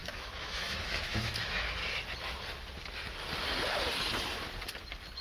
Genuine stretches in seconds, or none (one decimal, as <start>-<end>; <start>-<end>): 1.8-5.2